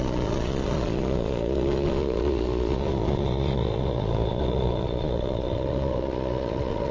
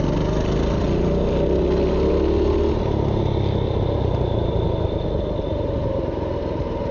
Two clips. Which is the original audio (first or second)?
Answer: second